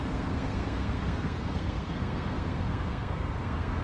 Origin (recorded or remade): remade